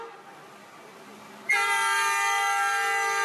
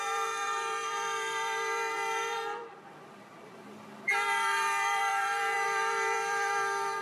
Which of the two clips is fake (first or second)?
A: second